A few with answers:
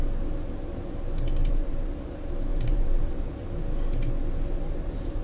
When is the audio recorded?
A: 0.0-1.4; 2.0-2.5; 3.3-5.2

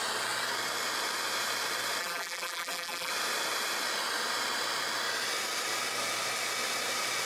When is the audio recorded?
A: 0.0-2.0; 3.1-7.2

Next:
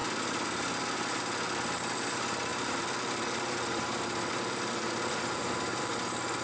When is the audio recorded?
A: 0.0-2.5; 5.8-6.4